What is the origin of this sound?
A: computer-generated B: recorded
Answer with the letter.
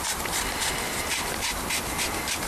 B